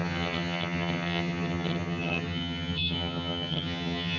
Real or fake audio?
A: fake